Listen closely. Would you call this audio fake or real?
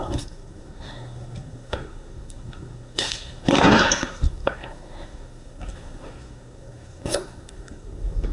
fake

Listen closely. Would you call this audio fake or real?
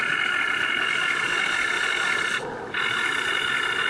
real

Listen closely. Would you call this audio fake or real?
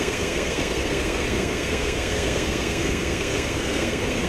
fake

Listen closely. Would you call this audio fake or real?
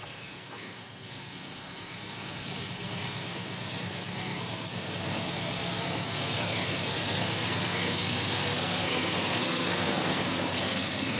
fake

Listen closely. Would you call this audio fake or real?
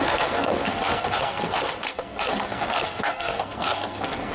fake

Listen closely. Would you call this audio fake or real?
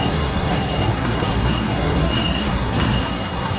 fake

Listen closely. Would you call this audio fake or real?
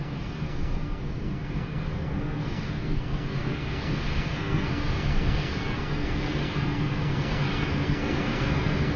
fake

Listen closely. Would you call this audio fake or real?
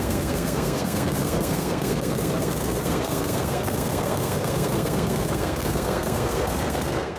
fake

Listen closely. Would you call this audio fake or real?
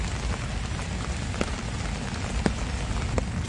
real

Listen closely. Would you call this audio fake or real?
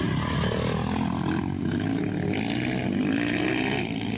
real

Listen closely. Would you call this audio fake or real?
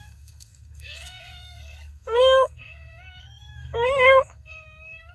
fake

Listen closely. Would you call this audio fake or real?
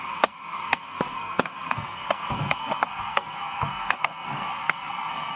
fake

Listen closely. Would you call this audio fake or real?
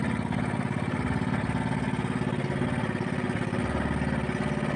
real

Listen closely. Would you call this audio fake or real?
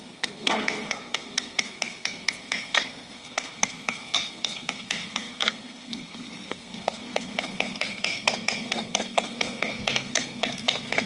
fake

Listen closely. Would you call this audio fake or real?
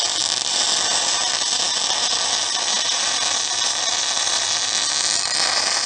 real